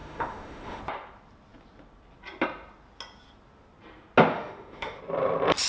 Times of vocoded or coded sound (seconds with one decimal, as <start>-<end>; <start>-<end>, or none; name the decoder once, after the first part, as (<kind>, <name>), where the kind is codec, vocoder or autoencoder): 0.0-0.8 (autoencoder, DAC-VAE); 4.3-5.0